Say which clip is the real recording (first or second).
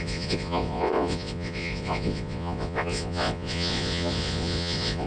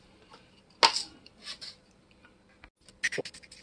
second